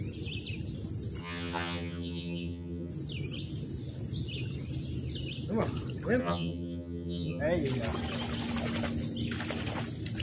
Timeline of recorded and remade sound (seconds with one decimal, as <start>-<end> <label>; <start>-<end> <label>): 0.0-1.2 recorded; 1.2-2.9 remade; 2.9-6.2 recorded; 6.2-7.4 remade; 7.4-10.2 recorded